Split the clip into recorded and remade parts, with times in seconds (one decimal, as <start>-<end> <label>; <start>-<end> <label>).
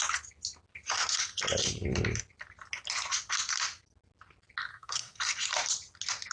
0.0-4.7 recorded; 4.7-5.2 remade; 5.2-6.3 recorded